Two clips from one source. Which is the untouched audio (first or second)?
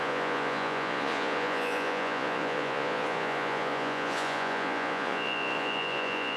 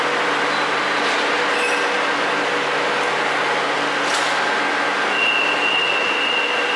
second